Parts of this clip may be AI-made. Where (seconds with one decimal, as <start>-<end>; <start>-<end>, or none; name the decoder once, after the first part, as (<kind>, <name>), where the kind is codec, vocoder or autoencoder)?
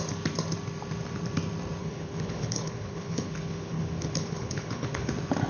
1.8-5.1 (codec, HILCodec)